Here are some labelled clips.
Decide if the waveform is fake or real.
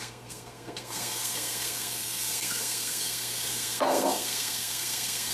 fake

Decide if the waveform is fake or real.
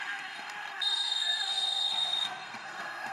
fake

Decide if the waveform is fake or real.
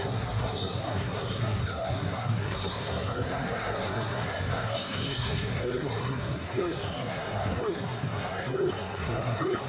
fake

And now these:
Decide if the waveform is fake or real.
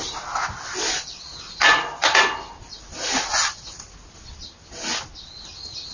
real